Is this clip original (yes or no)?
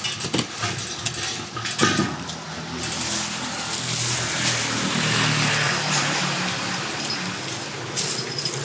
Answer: yes